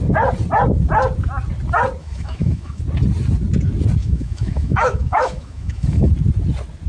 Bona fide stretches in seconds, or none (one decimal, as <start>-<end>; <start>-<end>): 0.0-2.0; 2.8-4.0; 6.1-6.9